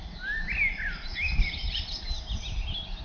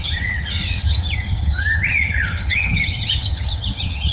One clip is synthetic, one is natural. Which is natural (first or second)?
first